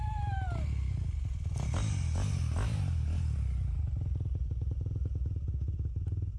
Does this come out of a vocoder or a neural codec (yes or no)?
no